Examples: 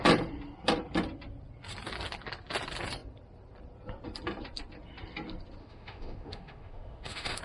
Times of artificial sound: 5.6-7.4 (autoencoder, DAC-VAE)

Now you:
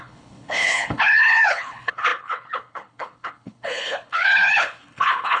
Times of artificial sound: 0.0-5.4 (codec, HILCodec)

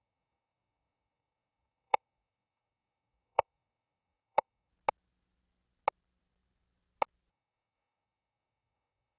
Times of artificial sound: 0.0-4.7 (codec, DAC); 7.3-9.2

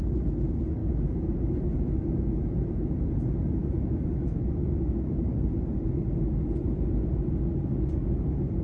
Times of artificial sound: 0.8-2.1 (autoencoder, DAC-VAE); 3.6-5.3

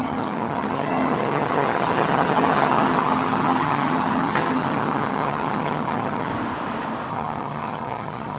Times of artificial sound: 0.0-6.3 (vocoder, HiFi-GAN); 7.1-8.4